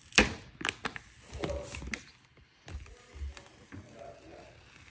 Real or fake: real